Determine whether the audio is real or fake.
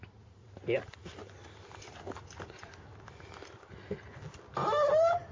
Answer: real